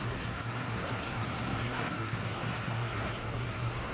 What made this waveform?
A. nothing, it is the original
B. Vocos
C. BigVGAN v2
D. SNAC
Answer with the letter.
D